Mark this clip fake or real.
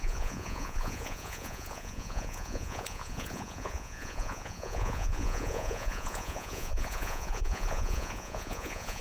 fake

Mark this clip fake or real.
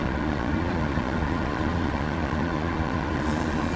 fake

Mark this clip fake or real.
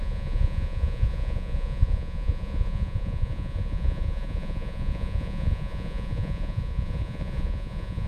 fake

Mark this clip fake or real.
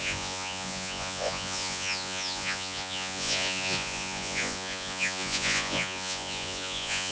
fake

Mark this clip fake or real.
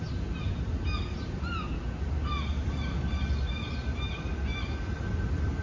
real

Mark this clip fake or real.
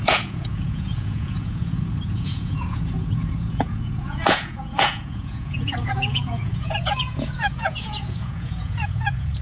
fake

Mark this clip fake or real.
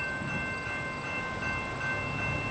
real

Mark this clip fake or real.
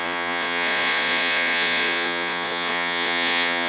fake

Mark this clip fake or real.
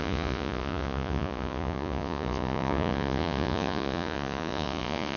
fake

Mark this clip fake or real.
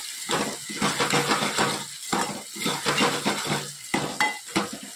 real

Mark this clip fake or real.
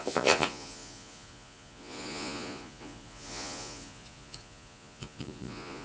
fake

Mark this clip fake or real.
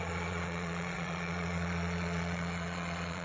fake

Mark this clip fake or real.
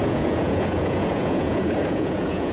fake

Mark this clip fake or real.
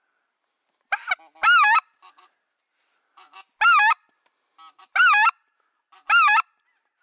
real